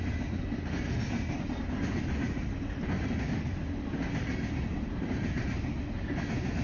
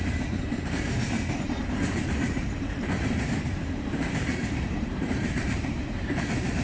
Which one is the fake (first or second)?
second